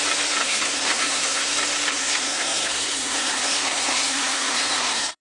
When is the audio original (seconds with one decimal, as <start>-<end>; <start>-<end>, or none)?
0.0-0.4; 1.5-1.9